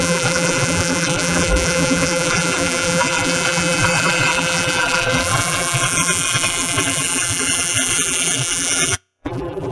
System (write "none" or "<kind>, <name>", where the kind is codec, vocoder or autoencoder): vocoder, BigVGAN v2